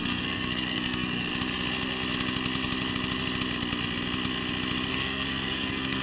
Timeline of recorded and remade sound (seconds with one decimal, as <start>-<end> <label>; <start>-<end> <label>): 0.0-1.3 remade; 1.3-4.9 recorded; 4.9-6.0 remade